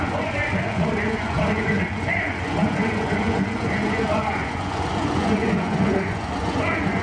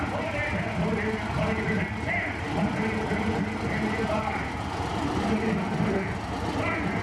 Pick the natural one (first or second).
second